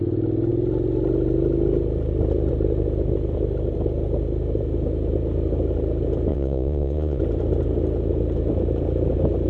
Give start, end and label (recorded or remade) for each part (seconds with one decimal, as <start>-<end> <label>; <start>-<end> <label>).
0.0-6.3 recorded; 6.3-7.2 remade; 7.2-9.5 recorded